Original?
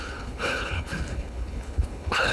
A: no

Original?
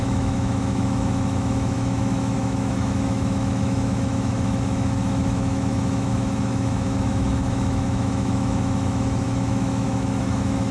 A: no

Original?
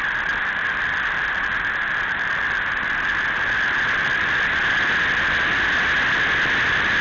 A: yes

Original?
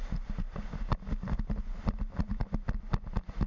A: yes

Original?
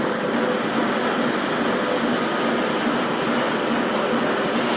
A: yes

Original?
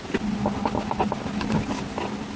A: yes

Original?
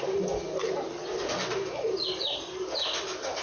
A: yes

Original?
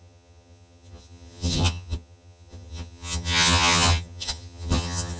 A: no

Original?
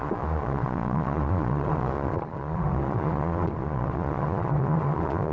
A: no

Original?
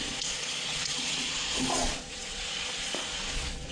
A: no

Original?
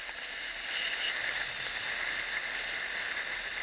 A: yes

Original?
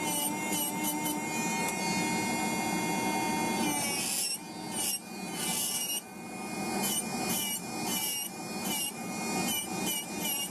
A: yes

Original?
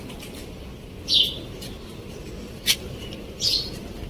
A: yes